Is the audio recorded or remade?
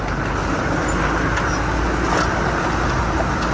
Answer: recorded